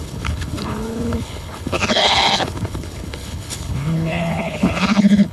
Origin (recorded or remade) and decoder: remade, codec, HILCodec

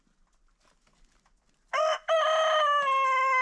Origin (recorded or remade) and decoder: recorded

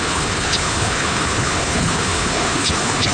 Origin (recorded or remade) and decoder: remade, codec, HILCodec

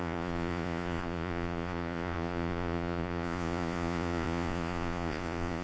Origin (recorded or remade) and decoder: remade, vocoder, Vocos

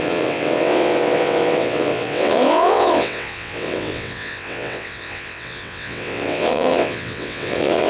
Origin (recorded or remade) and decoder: remade, vocoder, WaveNeXt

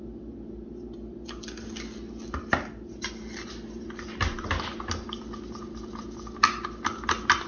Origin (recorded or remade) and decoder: recorded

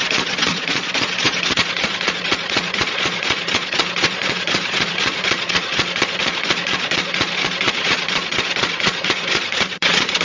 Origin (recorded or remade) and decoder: remade, vocoder, Vocos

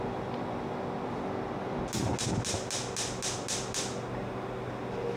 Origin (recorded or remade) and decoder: recorded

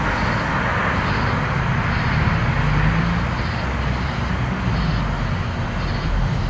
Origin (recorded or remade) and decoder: recorded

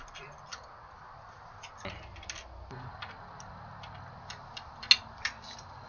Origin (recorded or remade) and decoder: recorded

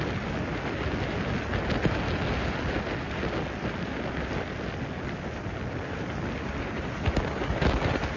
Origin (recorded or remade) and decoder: recorded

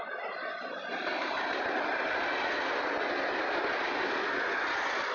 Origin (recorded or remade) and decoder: recorded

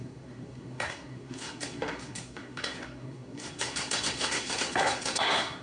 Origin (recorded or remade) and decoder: remade, codec, SNAC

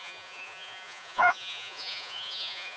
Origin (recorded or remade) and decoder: remade, vocoder, Vocos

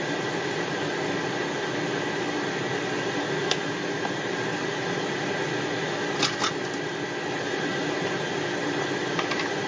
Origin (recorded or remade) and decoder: recorded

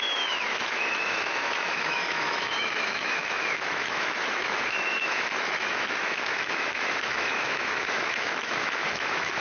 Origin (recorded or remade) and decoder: remade, autoencoder, DAC-VAE